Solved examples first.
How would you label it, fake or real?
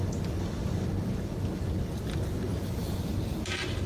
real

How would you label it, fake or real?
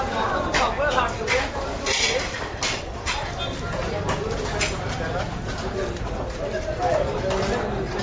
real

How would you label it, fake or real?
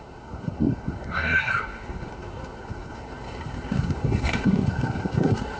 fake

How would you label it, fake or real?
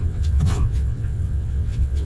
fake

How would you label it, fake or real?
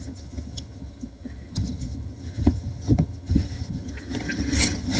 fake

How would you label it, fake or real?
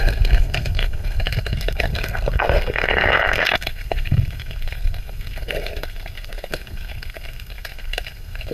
fake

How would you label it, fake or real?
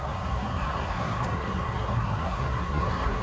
fake